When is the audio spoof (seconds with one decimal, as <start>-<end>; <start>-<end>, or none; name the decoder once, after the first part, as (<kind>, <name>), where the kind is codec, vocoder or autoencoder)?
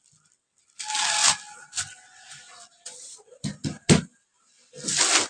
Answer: none